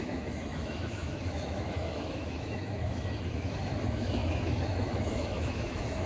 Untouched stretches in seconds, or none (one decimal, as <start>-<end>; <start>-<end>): none